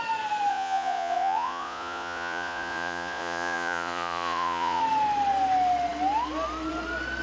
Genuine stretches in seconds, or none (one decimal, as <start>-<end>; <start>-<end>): 0.0-0.5; 4.8-7.2